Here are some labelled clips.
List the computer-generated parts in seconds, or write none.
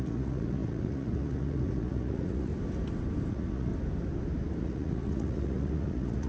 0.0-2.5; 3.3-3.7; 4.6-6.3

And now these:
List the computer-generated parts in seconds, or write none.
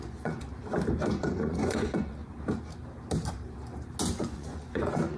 0.0-0.4; 1.2-2.2; 4.2-5.2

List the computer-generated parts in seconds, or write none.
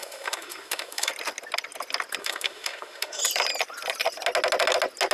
0.0-1.1; 2.2-3.2